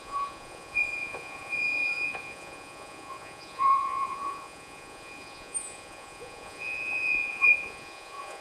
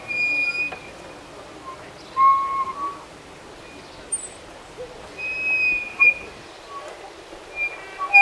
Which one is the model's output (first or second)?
first